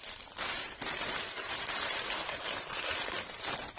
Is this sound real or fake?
fake